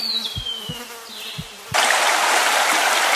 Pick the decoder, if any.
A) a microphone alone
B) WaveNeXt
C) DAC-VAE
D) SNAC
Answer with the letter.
A